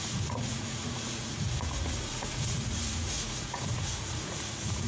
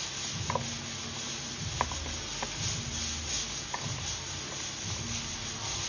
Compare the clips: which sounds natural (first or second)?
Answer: second